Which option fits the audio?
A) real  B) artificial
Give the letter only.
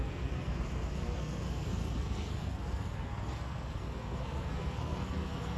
B